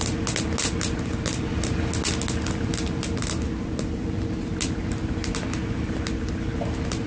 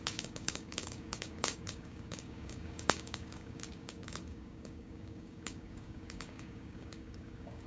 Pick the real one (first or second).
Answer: first